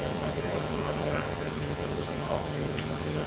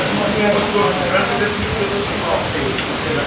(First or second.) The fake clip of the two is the first